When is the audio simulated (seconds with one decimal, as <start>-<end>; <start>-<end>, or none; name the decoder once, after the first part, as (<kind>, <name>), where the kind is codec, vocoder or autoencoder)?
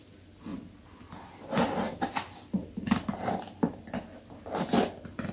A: 0.0-0.5 (vocoder, BigVGAN v2); 3.5-5.3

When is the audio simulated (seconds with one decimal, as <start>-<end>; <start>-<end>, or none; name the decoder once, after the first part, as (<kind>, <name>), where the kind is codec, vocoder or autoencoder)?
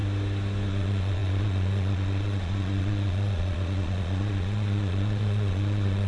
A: 0.7-6.1 (vocoder, Vocos)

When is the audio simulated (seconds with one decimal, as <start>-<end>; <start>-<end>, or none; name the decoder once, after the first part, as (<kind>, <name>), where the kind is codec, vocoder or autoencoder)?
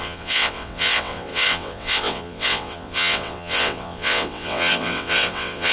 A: 0.0-5.7 (vocoder, WaveNeXt)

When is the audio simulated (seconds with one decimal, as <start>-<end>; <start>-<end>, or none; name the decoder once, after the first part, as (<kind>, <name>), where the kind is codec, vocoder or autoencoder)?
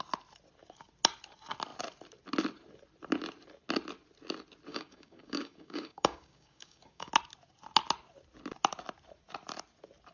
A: 4.7-7.1 (codec, DAC)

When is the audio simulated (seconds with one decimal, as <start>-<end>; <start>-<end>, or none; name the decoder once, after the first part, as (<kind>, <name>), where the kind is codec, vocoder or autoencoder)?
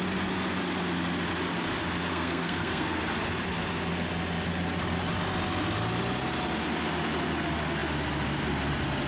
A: 2.1-3.0 (codec, SNAC)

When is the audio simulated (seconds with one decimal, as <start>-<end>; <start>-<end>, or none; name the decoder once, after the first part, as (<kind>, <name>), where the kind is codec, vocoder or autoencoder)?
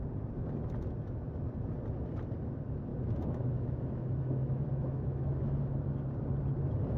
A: 2.9-5.9 (autoencoder, DAC-VAE)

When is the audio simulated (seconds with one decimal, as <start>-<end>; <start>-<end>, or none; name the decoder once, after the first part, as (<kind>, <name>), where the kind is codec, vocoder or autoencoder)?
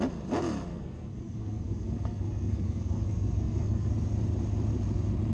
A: 0.7-3.9 (codec, SNAC)